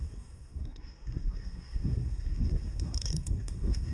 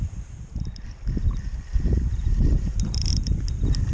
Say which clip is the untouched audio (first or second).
second